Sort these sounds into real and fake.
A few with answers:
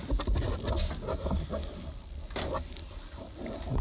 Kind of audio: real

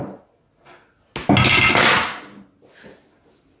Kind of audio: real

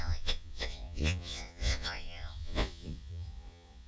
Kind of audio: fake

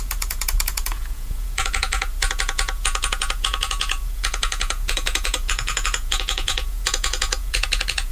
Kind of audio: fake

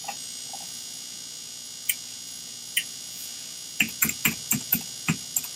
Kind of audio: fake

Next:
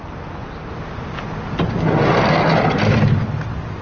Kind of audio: real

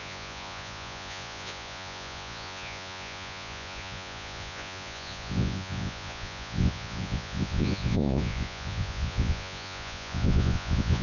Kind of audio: fake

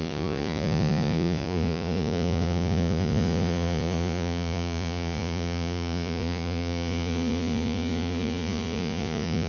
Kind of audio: fake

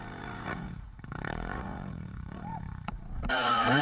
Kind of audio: fake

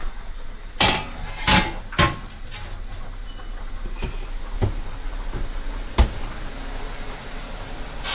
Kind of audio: real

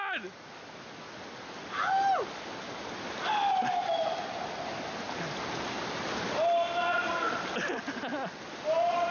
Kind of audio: real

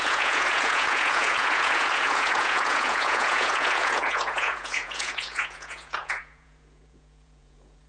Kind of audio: fake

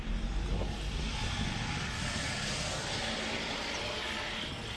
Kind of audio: real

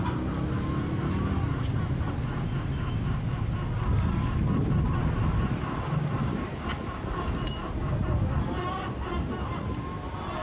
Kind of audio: real